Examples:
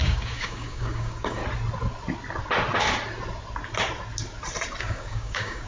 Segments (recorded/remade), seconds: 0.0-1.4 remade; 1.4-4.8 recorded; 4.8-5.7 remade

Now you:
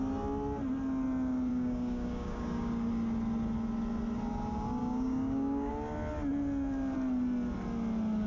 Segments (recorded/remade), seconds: 0.0-1.5 recorded; 1.5-2.9 remade; 2.9-4.8 recorded; 4.8-5.7 remade; 5.7-8.3 recorded

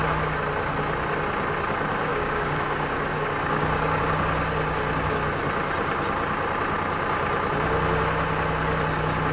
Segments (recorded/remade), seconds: 0.0-2.1 recorded; 2.1-4.0 remade; 4.0-9.3 recorded